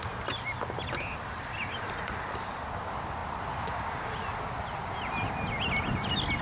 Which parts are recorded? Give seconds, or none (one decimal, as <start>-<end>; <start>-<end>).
0.0-6.4